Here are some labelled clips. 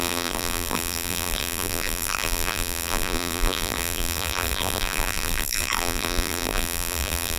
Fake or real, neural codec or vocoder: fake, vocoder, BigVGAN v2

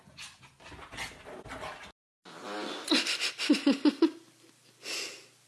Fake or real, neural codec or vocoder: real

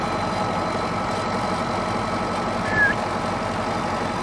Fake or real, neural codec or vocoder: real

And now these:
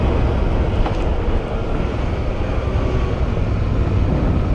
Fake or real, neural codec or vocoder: real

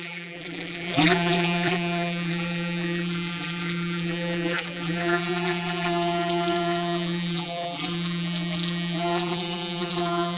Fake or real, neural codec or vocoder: fake, vocoder, BigVGAN v2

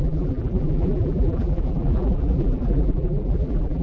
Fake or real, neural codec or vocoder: fake, vocoder, BigVGAN v2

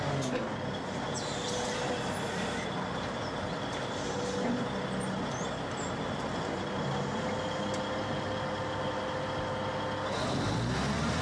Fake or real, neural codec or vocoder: real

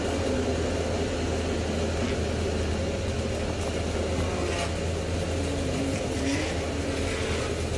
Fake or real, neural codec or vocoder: real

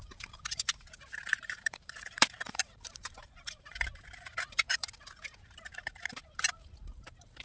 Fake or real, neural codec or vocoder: fake, vocoder, BigVGAN v2